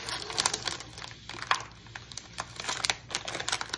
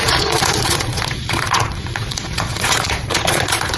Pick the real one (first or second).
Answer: first